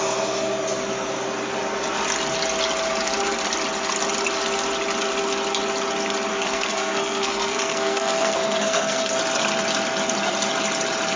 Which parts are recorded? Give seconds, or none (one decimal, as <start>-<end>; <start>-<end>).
0.0-6.3; 9.2-11.2